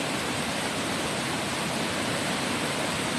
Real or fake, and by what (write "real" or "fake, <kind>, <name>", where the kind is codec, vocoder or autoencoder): fake, vocoder, BigVGAN v2